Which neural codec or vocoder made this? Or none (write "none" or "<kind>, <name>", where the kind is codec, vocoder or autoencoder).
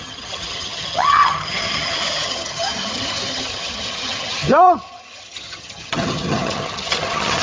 vocoder, HiFi-GAN